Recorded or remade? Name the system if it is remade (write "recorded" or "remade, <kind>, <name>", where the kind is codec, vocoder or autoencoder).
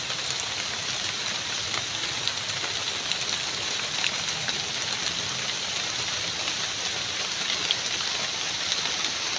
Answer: recorded